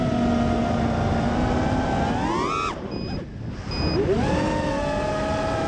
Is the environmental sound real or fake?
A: real